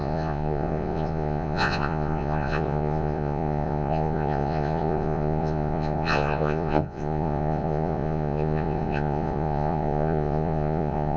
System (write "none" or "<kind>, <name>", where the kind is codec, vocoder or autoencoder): vocoder, Vocos